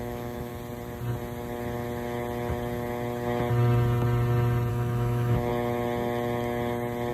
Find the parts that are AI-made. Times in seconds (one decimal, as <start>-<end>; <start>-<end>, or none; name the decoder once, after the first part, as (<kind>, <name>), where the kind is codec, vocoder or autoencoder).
0.0-0.5 (autoencoder, DAC-VAE); 4.7-5.5